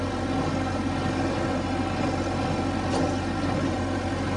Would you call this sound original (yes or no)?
yes